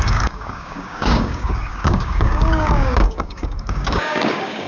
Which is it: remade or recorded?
remade